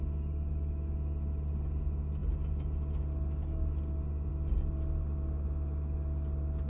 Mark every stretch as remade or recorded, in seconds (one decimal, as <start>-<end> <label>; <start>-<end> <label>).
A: 0.0-6.7 recorded